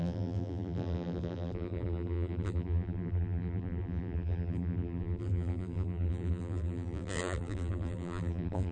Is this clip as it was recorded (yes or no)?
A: no